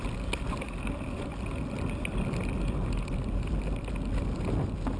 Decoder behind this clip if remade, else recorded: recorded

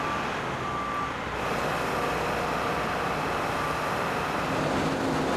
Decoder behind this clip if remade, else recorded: recorded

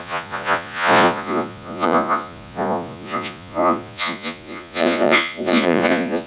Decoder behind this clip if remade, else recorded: remade, vocoder, Vocos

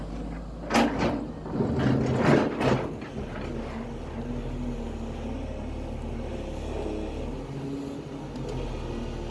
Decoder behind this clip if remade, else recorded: recorded